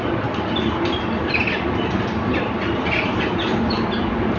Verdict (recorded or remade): recorded